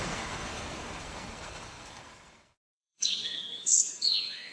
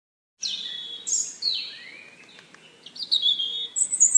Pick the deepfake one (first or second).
first